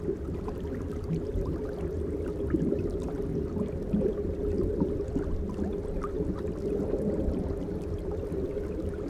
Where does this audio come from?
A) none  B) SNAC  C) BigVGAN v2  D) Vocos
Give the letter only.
A